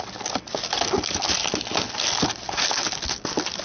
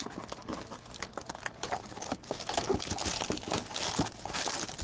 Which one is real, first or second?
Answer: first